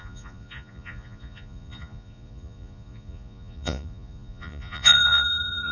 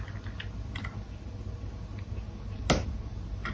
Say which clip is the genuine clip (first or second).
second